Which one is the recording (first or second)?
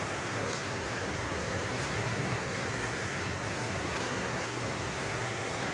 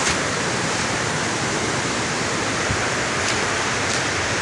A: second